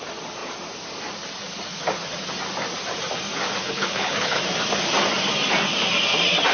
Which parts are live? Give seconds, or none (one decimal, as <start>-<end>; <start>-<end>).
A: 0.0-3.6; 4.4-6.5